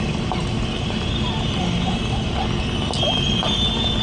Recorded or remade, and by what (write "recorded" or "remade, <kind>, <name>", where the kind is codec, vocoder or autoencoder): recorded